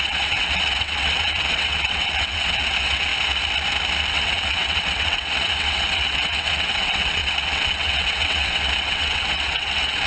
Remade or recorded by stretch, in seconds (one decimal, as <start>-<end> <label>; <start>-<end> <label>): 0.0-3.1 remade; 3.1-4.1 recorded; 4.1-10.1 remade